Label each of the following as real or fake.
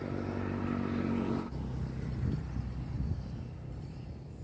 real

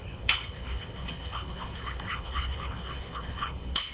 fake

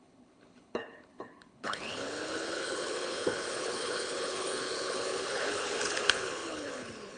fake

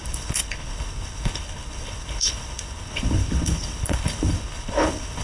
fake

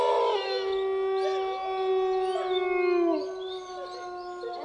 real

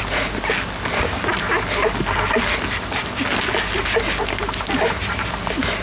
real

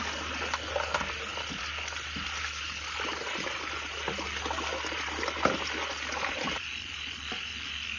real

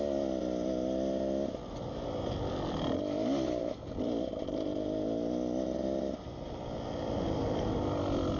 real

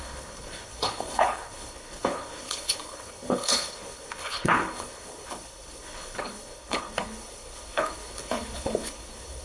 fake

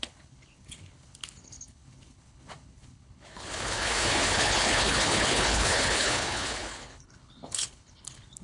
fake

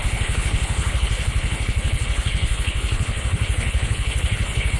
fake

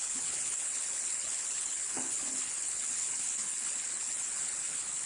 fake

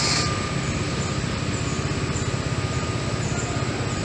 real